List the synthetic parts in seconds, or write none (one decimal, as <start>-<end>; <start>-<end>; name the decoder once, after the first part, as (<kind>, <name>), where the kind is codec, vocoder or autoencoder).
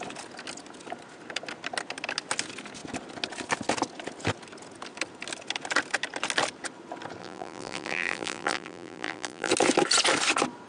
7.2-9.5 (vocoder, BigVGAN v2)